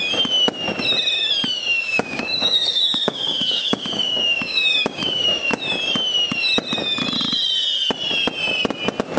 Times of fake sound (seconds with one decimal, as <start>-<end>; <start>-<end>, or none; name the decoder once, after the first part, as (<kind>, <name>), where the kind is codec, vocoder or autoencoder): 1.5-5.6 (codec, DAC)